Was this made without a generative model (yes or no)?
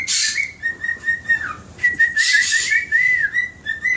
no